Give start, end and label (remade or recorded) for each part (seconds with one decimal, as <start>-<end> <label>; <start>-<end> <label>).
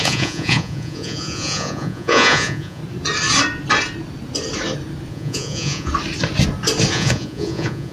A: 0.0-2.8 remade; 2.8-5.1 recorded; 5.1-5.9 remade; 5.9-6.9 recorded; 6.9-7.9 remade